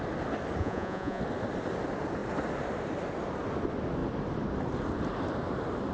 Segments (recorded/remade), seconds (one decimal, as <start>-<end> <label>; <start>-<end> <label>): 0.0-0.6 recorded; 0.6-1.2 remade; 1.2-5.9 recorded